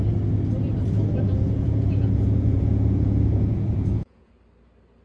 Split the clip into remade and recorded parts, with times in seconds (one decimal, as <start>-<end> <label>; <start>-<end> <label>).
0.0-1.3 recorded; 1.3-4.3 remade; 4.3-5.0 recorded